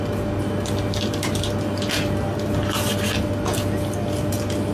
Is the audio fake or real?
real